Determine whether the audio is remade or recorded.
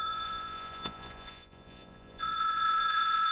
remade